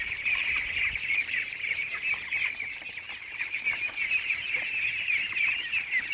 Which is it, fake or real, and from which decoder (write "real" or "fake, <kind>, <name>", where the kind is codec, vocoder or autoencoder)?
fake, vocoder, BigVGAN v2